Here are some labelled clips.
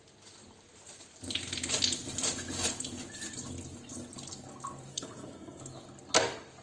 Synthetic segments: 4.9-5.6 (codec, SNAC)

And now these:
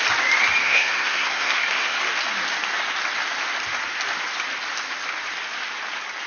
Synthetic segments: 0.6-2.0 (codec, SNAC)

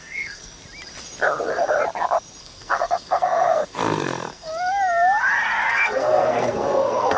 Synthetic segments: 0.0-0.6 (codec, SNAC); 2.4-4.5; 5.7-7.2

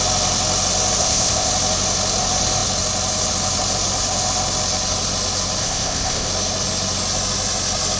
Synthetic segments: 1.0-1.5 (codec, ZipCodec); 5.6-6.3

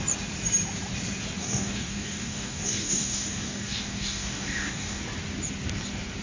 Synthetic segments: 1.4-5.0 (codec, DAC)

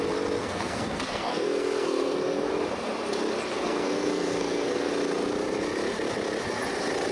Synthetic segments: 0.4-2.5 (codec, SNAC); 3.5-4.9

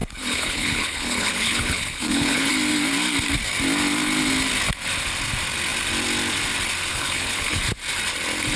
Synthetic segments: 0.0-2.5 (codec, HILCodec); 6.9-7.6

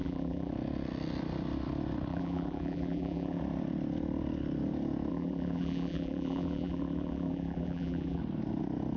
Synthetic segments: 0.0-0.5 (vocoder, BigVGAN v2); 2.1-3.4; 5.1-8.2